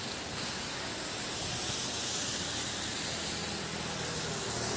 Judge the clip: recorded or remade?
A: recorded